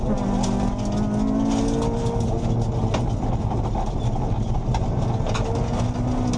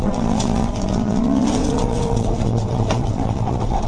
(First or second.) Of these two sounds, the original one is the first